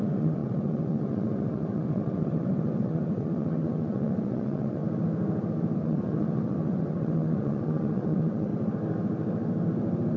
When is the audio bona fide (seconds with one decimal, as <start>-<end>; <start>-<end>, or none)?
4.8-5.8; 8.5-10.2

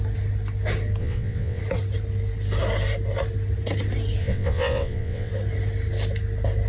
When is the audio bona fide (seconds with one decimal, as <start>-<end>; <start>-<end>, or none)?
0.0-1.0; 1.6-4.2; 5.3-6.7

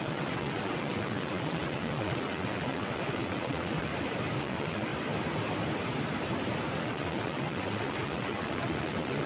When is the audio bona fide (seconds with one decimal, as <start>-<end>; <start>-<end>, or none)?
3.9-4.4; 4.9-6.8